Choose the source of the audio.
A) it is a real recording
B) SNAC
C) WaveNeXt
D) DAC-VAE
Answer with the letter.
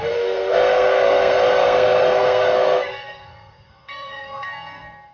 B